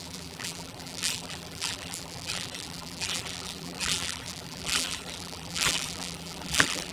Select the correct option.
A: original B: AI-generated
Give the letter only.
B